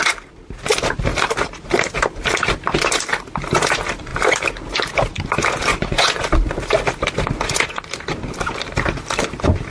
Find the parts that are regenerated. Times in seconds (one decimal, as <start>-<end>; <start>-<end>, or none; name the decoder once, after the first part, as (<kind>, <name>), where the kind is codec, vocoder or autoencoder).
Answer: 5.7-6.3 (vocoder, Vocos)